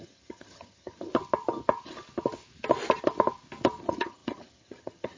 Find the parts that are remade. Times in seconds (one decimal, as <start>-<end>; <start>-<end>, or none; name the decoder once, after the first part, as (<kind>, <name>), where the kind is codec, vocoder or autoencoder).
0.0-1.1 (vocoder, HiFi-GAN); 3.8-5.2